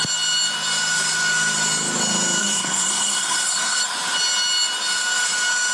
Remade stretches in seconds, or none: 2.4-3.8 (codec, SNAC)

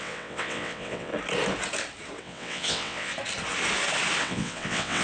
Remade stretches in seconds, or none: 0.0-1.1 (vocoder, WaveNeXt); 2.2-3.1; 4.2-5.0